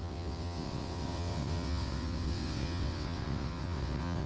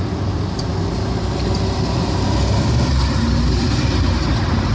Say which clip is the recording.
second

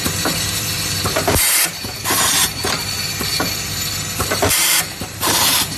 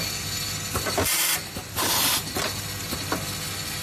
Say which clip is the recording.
second